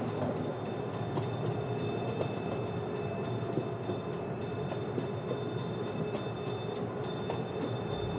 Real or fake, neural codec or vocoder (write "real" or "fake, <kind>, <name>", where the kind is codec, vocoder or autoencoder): real